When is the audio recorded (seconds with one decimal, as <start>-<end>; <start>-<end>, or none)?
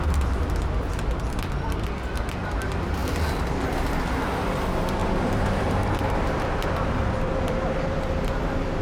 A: 0.0-5.0; 8.0-8.8